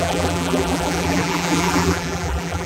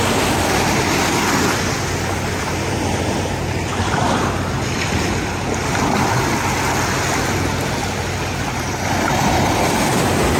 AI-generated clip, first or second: first